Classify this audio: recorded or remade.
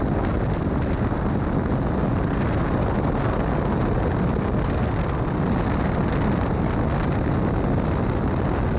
recorded